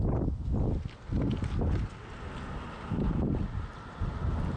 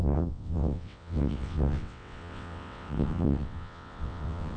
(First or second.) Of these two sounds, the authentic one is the first